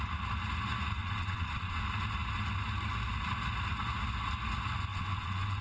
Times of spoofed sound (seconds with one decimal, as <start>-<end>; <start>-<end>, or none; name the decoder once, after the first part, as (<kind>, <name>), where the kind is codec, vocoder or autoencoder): 1.0-1.8 (vocoder, WaveNeXt); 4.9-5.6